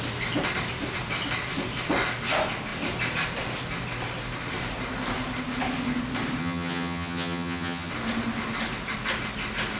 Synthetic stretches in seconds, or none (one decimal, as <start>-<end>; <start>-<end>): 6.4-7.9